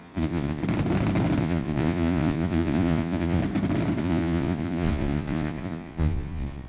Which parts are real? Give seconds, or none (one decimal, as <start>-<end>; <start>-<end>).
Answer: 0.6-1.4; 3.4-4.0